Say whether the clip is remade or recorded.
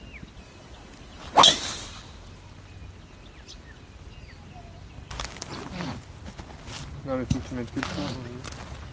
recorded